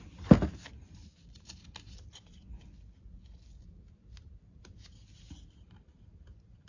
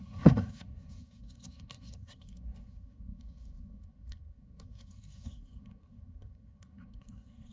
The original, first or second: first